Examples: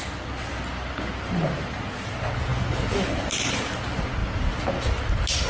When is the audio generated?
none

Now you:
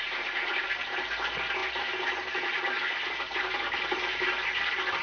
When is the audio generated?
none

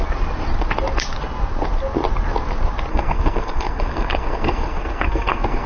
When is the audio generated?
2.9-5.7 (codec, SNAC)

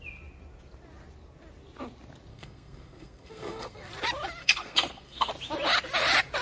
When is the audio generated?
2.3-3.9 (codec, SNAC); 4.4-5.3

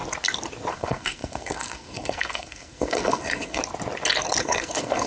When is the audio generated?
0.7-3.6 (codec, SNAC); 4.4-5.1